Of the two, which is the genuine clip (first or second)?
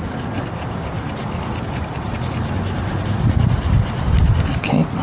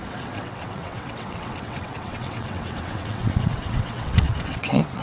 first